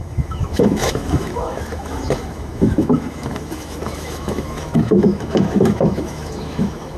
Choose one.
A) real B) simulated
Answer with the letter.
B